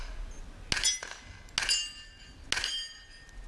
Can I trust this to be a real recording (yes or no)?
yes